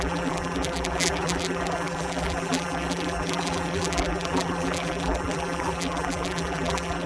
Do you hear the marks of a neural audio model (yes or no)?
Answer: yes